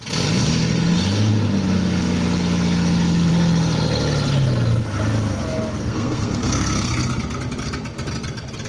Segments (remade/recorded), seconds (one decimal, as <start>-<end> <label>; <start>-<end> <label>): 0.0-5.8 recorded; 5.8-6.9 remade; 6.9-8.7 recorded